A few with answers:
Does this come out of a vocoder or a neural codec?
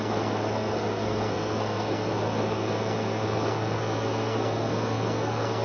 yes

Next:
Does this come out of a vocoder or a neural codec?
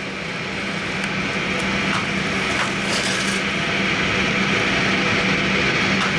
no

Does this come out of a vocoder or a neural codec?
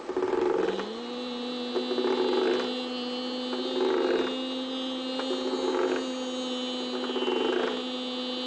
no